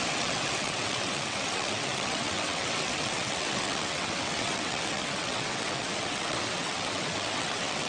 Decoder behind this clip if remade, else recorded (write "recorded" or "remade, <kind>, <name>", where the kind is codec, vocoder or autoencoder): remade, vocoder, WaveNeXt